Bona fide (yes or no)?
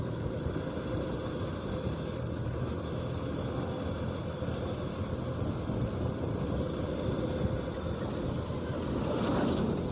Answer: yes